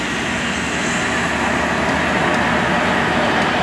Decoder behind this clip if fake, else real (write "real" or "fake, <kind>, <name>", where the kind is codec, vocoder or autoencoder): real